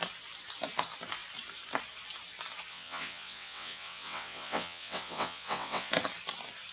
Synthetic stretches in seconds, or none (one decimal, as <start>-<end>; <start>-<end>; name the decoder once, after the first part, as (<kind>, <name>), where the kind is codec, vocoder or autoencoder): 2.7-5.9 (vocoder, WaveNeXt)